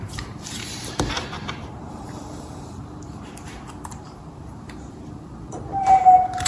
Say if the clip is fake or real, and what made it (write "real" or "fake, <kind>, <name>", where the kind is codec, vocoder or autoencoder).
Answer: fake, vocoder, BigVGAN v2